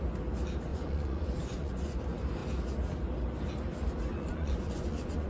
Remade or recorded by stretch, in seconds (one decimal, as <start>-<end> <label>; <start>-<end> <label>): 0.0-0.7 recorded; 0.7-2.0 remade; 2.0-4.1 recorded; 4.1-5.3 remade